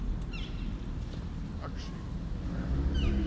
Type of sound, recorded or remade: recorded